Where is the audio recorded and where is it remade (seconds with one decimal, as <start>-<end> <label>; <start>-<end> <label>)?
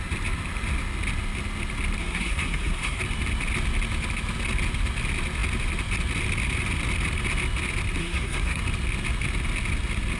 0.0-2.0 recorded; 2.0-3.0 remade; 3.0-8.0 recorded; 8.0-8.6 remade; 8.6-10.2 recorded